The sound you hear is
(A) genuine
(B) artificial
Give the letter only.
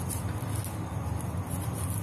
A